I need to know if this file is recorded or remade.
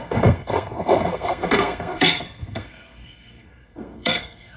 remade